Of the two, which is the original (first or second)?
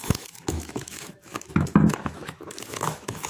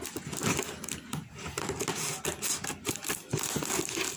second